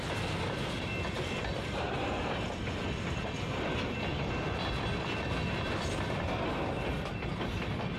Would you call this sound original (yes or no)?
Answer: yes